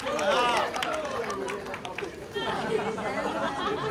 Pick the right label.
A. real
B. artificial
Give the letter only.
A